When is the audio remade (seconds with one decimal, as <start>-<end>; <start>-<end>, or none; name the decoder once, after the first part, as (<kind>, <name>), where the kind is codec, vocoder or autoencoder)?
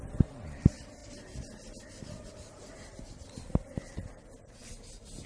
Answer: none